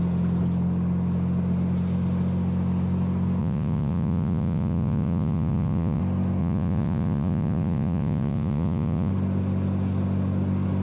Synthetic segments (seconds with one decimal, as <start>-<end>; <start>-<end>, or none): 3.4-6.0; 6.4-9.1